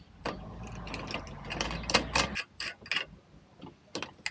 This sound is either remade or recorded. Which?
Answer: recorded